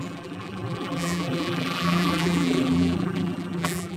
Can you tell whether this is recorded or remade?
remade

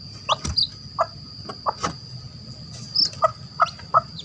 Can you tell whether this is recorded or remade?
recorded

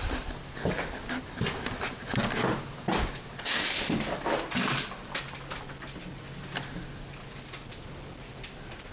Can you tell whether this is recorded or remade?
recorded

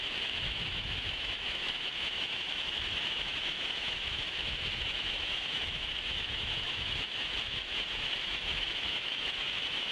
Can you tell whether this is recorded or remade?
remade